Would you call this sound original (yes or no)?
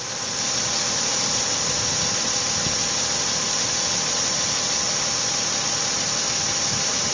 yes